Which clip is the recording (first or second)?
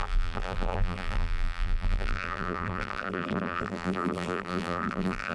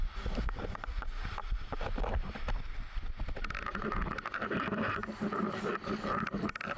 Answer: second